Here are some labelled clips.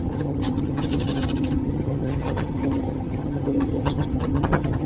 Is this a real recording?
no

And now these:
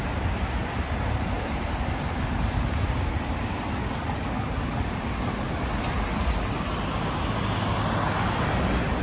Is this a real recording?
yes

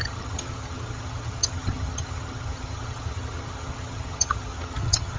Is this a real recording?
no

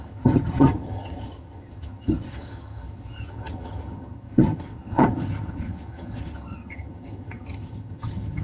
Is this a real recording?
no